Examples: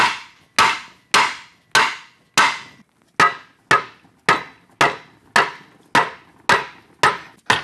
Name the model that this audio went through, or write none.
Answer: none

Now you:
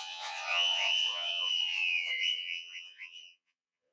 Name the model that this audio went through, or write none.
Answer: vocoder, Vocos